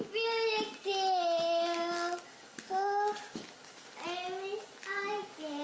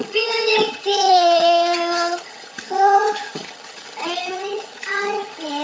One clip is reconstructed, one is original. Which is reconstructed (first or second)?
second